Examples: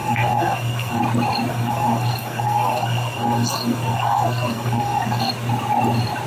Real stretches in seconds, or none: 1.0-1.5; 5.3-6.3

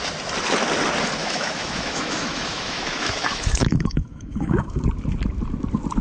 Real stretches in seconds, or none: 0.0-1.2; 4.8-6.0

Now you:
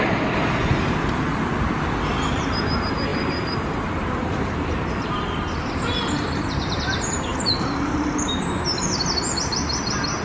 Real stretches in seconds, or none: 1.5-2.0

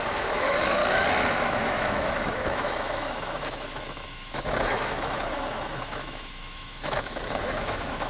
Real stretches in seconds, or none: 0.8-1.4

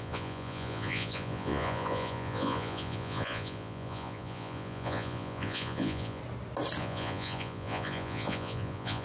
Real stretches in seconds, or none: 6.2-6.8